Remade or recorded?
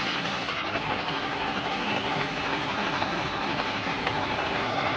remade